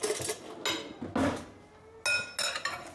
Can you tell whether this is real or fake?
real